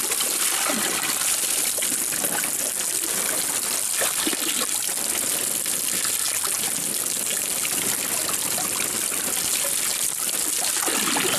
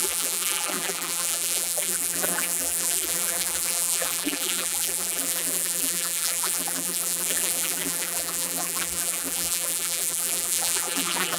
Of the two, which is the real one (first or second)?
first